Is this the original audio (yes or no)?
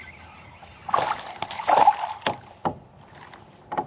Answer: yes